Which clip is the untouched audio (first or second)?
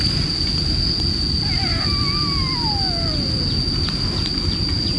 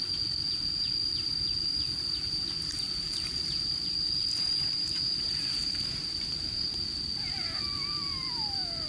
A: first